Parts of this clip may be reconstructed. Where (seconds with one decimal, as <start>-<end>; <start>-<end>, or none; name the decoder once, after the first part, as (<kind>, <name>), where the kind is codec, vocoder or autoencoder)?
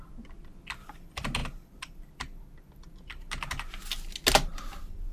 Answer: none